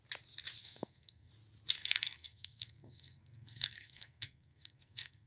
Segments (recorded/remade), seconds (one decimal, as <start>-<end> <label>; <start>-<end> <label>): 0.0-0.6 recorded; 0.6-1.3 remade; 1.3-1.8 recorded; 1.8-5.3 remade